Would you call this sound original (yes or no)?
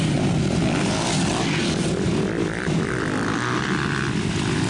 yes